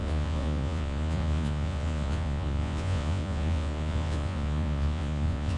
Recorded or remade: remade